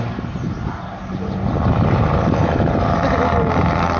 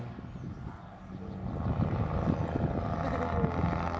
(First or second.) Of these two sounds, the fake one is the first